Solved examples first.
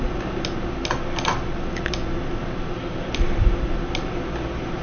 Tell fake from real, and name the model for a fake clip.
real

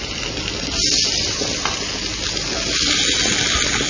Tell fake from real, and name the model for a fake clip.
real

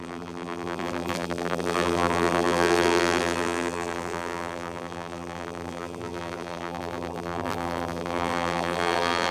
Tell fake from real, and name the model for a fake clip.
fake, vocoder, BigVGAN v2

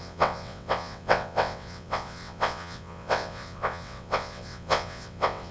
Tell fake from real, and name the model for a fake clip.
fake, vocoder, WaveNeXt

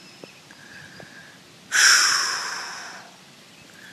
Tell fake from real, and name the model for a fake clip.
real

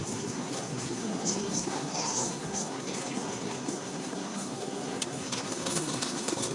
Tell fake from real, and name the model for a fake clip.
fake, codec, SNAC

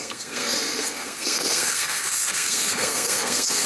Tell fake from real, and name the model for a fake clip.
fake, codec, SNAC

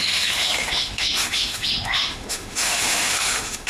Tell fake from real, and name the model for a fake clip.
fake, autoencoder, DAC-VAE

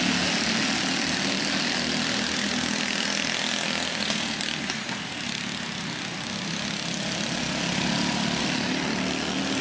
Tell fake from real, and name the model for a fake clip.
real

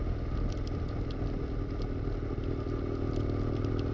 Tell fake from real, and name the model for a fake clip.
real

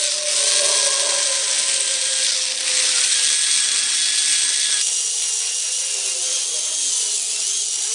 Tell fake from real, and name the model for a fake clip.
real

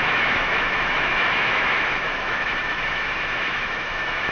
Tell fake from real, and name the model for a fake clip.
fake, autoencoder, DAC-VAE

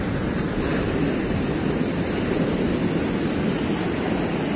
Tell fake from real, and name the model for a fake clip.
real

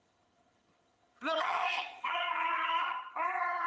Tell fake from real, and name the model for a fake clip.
fake, vocoder, HiFi-GAN